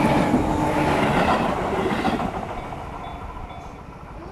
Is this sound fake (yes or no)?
no